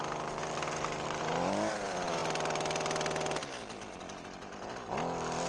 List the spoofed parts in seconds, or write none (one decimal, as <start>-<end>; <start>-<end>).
none